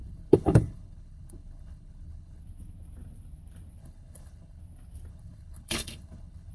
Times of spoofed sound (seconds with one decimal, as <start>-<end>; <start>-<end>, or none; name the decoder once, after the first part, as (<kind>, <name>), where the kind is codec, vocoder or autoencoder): 0.0-2.4 (codec, HILCodec); 3.8-4.6; 5.1-6.5